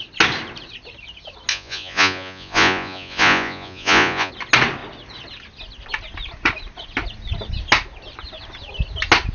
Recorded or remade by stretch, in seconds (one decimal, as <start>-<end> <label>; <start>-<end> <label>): 0.0-1.5 recorded; 1.5-4.3 remade; 4.3-9.3 recorded